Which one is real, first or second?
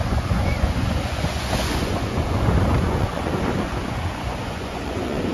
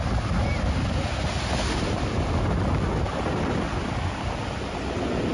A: second